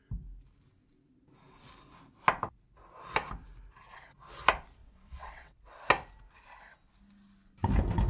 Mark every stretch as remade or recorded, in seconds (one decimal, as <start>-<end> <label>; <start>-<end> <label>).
0.0-4.8 recorded; 4.8-5.6 remade; 5.6-8.1 recorded